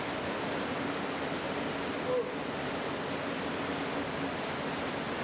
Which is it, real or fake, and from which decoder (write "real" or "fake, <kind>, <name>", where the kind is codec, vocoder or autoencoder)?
real